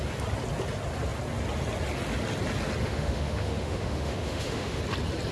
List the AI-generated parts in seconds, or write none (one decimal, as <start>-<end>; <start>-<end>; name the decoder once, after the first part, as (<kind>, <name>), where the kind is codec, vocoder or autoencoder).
2.8-4.8 (autoencoder, DAC-VAE)